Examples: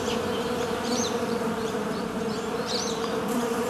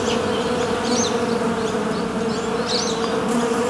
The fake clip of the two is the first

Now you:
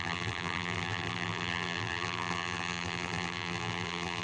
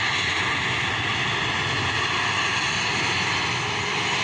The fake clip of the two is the first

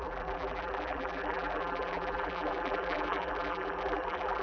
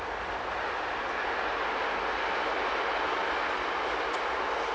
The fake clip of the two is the first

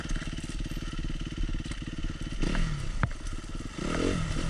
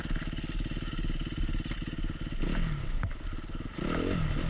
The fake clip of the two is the first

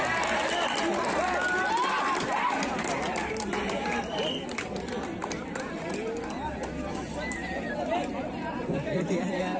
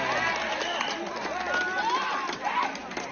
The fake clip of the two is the first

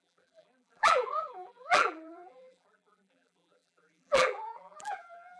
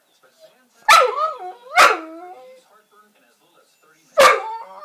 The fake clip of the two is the first